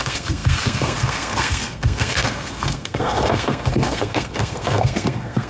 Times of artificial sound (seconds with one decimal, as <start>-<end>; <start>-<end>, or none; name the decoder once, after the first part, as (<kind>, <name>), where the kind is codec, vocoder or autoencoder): 0.0-5.5 (codec, SNAC)